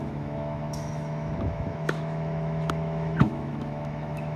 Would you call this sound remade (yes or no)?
yes